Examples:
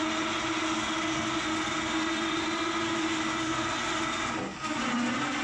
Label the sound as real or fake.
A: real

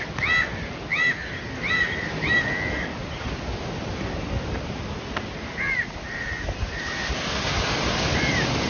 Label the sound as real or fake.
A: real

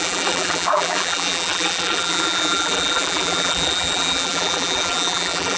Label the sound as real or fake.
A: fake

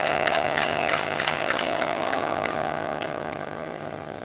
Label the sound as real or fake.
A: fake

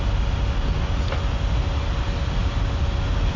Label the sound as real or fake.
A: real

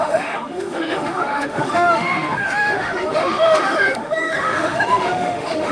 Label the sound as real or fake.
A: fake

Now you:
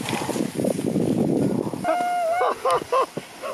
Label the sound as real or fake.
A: real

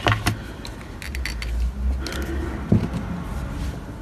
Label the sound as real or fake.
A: real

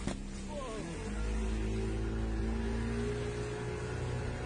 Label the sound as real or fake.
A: real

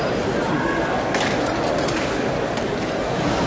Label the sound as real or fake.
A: real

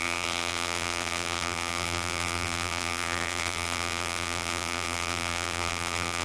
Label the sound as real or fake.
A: fake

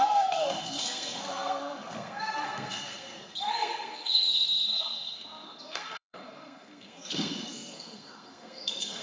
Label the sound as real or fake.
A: fake